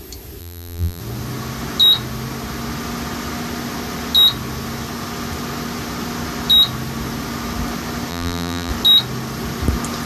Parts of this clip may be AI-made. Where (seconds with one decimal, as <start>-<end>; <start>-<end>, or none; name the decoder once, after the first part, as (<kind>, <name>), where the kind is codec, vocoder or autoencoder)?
0.4-1.0 (vocoder, BigVGAN v2); 8.1-8.7